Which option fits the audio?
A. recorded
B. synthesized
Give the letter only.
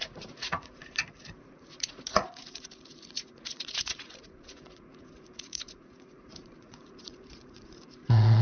B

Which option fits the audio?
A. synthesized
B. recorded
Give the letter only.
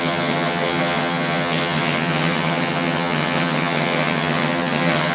A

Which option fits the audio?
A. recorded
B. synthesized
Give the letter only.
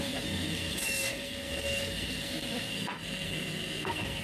B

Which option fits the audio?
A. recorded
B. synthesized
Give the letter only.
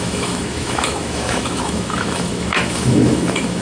B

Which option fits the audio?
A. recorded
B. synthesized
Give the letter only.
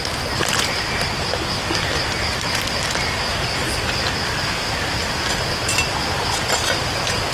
A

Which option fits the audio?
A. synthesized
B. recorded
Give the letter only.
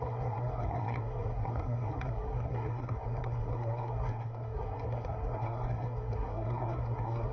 A